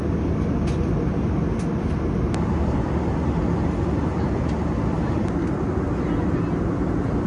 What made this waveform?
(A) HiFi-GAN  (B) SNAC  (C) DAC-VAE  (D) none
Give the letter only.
D